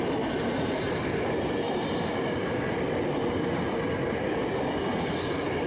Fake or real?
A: real